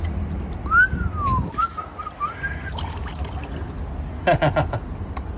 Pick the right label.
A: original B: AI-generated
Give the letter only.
A